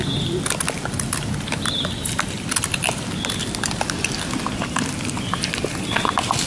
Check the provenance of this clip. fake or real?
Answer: real